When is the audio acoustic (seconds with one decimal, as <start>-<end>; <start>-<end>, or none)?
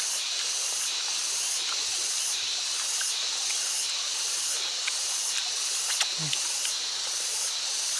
0.0-8.0